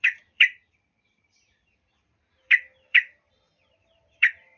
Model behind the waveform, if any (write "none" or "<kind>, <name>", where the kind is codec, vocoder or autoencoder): vocoder, BigVGAN v2